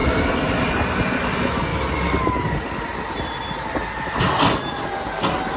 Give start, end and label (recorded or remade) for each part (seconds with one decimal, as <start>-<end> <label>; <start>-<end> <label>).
0.0-0.7 remade; 0.7-5.6 recorded